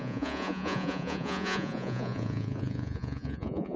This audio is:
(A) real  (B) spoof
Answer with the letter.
B